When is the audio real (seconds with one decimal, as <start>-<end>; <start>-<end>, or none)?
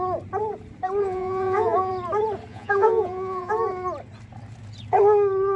0.0-1.0; 1.9-2.5; 3.5-5.6